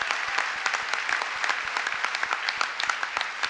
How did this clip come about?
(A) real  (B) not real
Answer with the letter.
A